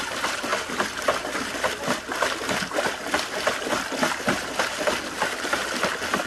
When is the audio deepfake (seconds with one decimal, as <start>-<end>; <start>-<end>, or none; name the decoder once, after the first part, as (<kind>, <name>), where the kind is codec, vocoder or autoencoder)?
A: none